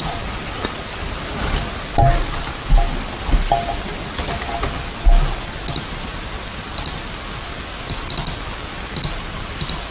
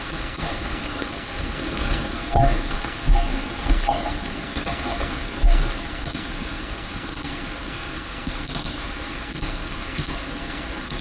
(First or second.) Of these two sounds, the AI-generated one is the second